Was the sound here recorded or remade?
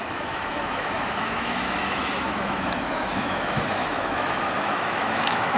remade